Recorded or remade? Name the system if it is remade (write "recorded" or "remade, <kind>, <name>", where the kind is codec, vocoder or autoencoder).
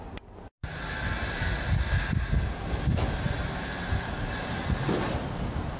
recorded